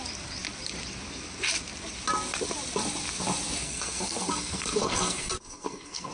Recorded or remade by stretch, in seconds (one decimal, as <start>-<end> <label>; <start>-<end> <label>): 0.0-3.6 recorded; 3.6-6.1 remade